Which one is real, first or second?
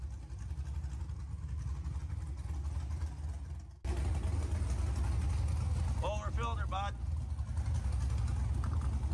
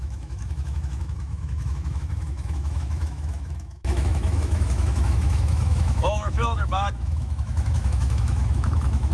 first